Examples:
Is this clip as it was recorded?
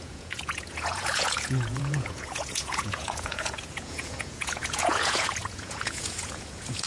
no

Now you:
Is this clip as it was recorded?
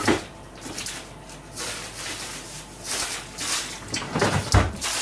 yes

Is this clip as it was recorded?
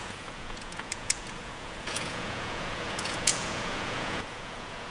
no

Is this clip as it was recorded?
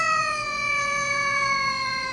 no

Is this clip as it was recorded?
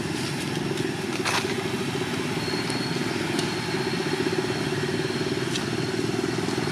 yes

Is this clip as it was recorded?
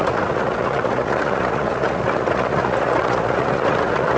no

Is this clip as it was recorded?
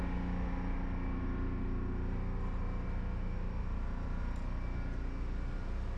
yes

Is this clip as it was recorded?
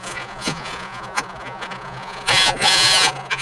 no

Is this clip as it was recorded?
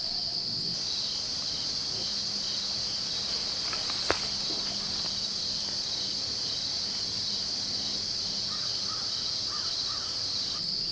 yes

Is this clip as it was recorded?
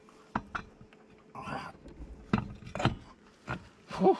yes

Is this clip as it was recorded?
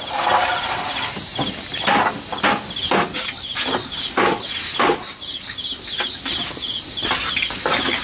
yes